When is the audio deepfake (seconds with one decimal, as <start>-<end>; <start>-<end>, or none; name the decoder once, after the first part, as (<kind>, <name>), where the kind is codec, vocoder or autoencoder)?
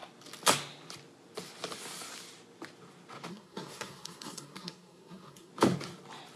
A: 3.3-5.5 (codec, SNAC)